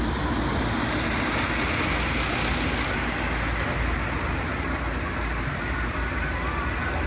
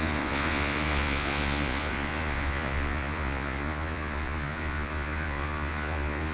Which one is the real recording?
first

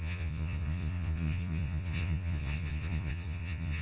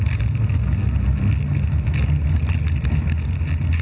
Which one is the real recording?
second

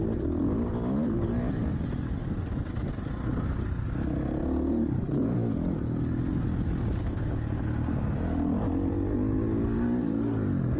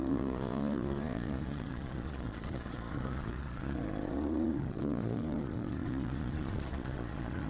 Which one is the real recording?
first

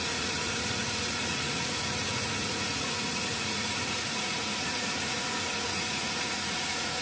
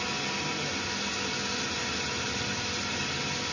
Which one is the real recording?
second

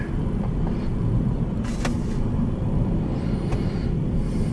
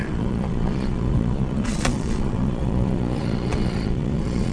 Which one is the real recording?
first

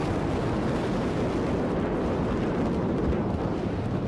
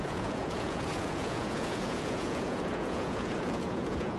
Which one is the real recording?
first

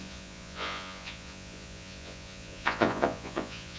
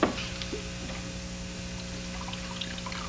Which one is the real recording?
second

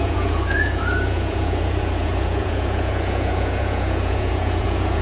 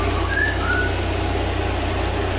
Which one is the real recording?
second